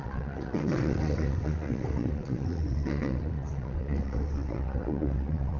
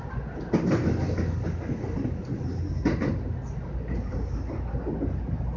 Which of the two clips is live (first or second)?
second